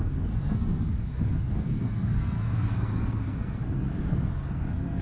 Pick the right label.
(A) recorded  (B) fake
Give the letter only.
B